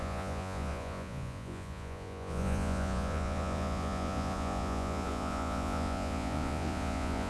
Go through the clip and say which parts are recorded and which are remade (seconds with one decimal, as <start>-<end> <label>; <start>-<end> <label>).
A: 0.0-7.3 remade